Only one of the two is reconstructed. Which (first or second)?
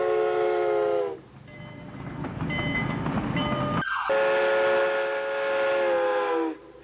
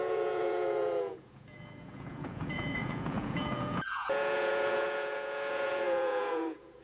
second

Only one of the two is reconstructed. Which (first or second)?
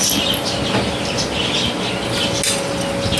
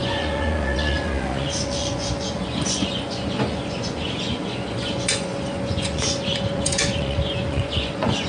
second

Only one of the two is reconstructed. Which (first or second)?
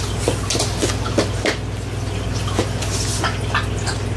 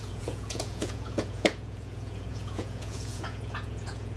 second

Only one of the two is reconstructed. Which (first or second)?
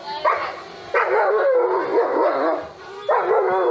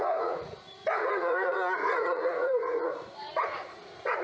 second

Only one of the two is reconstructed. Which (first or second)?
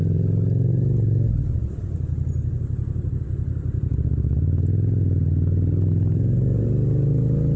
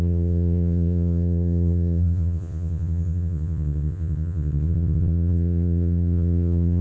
second